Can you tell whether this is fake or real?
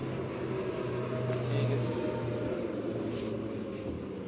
real